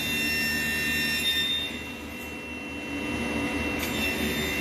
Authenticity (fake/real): real